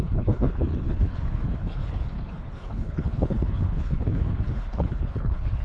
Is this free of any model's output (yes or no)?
no